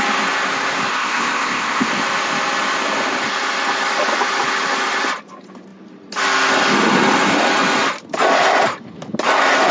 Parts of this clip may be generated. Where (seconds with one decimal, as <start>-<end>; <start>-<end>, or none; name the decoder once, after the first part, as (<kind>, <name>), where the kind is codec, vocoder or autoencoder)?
0.9-1.9 (codec, ZipCodec)